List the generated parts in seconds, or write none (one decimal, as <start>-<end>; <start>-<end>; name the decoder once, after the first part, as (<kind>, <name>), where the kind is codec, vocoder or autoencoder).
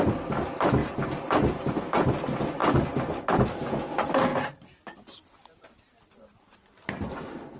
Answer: none